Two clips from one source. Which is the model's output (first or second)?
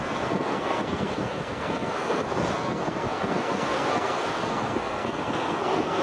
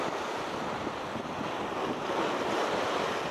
first